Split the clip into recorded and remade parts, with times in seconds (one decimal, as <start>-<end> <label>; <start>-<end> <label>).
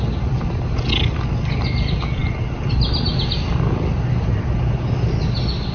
0.0-5.7 recorded